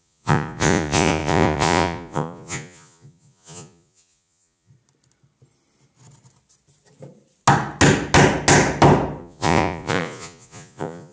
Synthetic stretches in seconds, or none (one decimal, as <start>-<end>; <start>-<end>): 0.0-4.7; 9.2-11.1